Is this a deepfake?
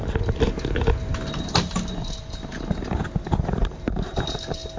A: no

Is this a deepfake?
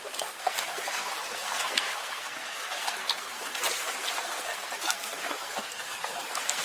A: yes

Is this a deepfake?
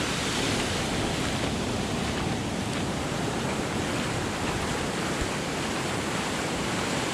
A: no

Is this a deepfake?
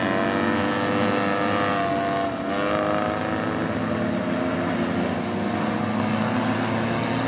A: no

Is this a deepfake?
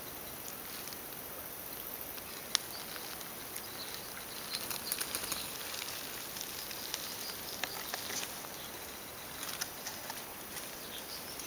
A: no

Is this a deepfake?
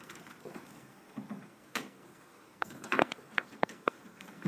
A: yes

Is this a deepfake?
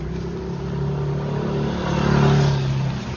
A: no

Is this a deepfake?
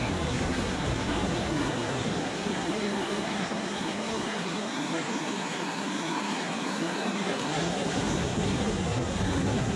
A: yes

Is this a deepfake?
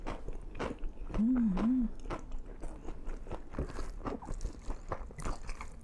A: no